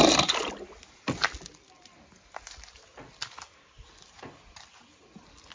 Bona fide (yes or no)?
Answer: yes